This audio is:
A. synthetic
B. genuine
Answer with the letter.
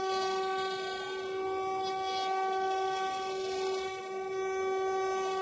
B